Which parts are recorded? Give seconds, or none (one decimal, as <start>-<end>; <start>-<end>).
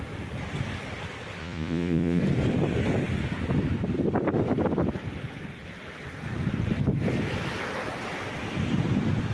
0.0-1.4; 2.2-9.3